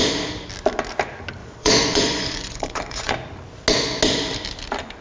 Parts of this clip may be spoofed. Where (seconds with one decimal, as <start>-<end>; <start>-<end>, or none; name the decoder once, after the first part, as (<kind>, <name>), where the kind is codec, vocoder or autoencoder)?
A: 1.4-3.1 (vocoder, Vocos)